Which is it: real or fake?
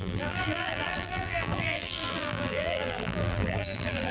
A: fake